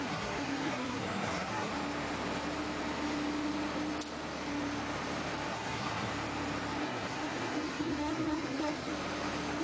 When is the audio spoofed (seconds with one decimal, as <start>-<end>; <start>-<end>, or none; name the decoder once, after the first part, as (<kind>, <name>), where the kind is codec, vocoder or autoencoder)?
0.0-1.7 (codec, SNAC); 5.5-6.1; 6.8-8.9